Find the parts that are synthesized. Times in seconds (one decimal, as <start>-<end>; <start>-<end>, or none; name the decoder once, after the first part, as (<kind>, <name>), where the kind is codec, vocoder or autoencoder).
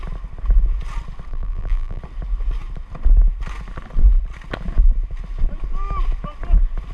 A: 1.3-2.0 (vocoder, BigVGAN v2)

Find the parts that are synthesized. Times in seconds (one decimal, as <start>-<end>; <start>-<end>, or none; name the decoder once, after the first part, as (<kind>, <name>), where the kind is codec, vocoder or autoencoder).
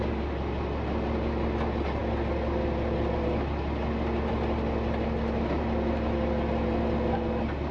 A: none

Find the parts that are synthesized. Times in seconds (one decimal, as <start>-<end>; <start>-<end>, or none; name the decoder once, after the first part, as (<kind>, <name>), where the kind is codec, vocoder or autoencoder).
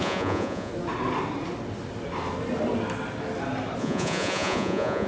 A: 0.0-0.7 (vocoder, Vocos); 3.8-5.1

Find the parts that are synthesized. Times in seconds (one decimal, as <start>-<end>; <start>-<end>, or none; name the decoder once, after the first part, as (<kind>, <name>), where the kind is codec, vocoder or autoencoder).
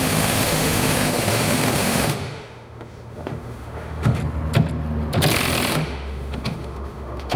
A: 0.0-4.2 (autoencoder, DAC-VAE); 5.7-7.4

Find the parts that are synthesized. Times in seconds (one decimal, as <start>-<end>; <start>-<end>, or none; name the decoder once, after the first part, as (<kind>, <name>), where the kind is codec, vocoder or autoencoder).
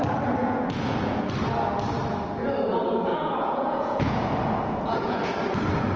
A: 0.4-1.3 (vocoder, Vocos); 3.1-5.4